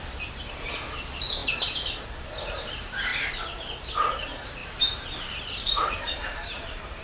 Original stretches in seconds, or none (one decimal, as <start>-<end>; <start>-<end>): 3.1-3.8